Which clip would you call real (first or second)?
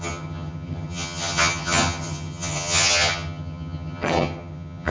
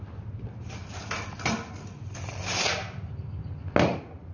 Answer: second